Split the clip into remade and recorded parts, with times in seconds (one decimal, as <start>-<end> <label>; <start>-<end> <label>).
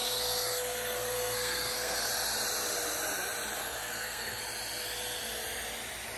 0.0-2.1 remade; 2.1-3.6 recorded; 3.6-4.4 remade; 4.4-6.2 recorded